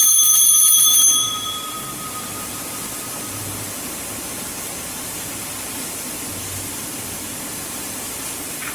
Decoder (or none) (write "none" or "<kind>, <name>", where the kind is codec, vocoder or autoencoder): vocoder, BigVGAN v2